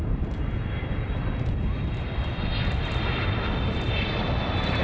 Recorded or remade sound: recorded